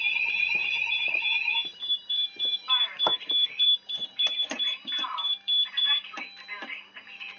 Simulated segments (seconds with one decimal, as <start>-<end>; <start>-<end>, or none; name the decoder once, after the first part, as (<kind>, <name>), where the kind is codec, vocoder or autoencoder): 0.0-7.4 (vocoder, BigVGAN v2)